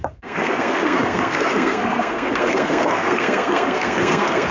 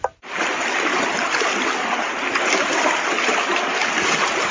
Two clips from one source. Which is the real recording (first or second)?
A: second